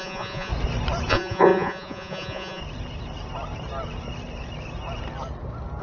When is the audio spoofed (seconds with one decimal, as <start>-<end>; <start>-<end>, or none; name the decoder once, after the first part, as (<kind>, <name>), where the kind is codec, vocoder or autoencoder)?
0.0-0.5 (vocoder, Vocos); 1.1-2.6